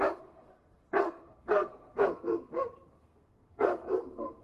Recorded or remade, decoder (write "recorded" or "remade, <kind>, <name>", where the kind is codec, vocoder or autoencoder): remade, codec, SNAC